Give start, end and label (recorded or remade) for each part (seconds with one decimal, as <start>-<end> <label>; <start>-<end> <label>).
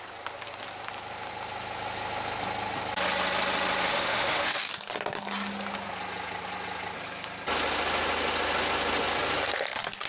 0.0-3.9 recorded; 3.9-4.7 remade; 4.7-10.1 recorded